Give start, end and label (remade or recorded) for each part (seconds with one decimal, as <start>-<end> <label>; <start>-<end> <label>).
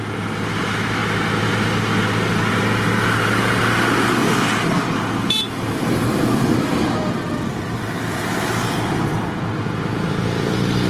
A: 0.0-10.9 recorded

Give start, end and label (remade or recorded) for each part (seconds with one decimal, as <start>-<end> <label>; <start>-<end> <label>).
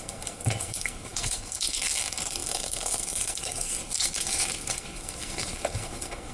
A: 0.0-6.3 remade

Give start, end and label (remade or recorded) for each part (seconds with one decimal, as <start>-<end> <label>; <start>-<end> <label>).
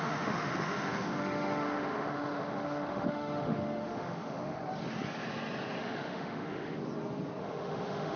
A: 0.0-4.6 remade; 4.6-5.8 recorded; 5.8-6.8 remade; 6.8-7.4 recorded; 7.4-8.2 remade